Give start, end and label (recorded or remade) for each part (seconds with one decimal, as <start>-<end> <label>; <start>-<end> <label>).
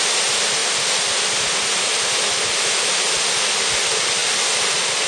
0.0-5.1 recorded